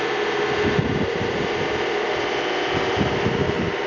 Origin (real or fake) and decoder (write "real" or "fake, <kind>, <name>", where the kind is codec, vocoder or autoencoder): real